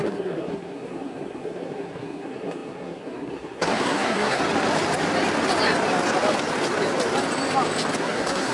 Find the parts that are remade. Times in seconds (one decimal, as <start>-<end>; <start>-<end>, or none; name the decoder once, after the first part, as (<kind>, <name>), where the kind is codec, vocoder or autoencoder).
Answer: 0.0-4.4 (codec, SNAC); 8.0-8.5

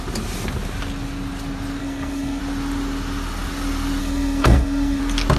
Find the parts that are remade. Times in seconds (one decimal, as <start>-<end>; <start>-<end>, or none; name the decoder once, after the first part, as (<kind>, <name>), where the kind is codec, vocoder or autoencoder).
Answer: 1.8-2.4 (codec, SNAC); 4.0-5.0

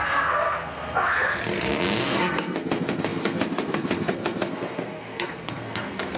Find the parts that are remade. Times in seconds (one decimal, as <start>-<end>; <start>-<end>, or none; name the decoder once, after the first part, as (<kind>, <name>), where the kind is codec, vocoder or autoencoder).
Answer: 0.0-1.4 (codec, SNAC); 2.0-6.2

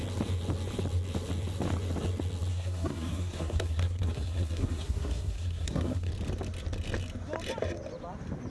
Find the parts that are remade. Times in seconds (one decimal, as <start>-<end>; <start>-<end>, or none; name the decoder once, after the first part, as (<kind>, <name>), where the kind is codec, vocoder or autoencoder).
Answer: 2.5-6.1 (codec, SNAC)

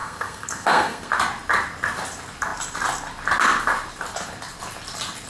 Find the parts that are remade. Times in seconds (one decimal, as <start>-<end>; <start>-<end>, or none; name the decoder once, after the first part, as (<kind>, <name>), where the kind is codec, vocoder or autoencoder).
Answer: 0.0-1.1 (codec, SNAC)

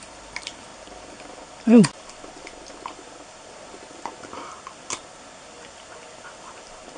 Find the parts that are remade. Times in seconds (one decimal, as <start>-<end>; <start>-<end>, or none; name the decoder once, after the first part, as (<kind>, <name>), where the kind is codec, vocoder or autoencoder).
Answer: none

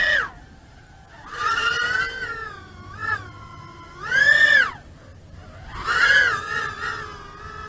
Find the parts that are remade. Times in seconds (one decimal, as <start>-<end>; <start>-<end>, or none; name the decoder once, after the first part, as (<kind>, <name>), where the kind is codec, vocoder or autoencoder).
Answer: none

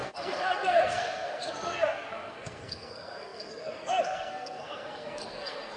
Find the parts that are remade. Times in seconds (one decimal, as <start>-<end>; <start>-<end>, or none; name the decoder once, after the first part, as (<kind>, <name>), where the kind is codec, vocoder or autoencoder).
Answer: 0.0-5.8 (codec, SNAC)